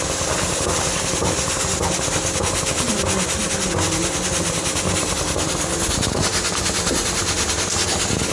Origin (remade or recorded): recorded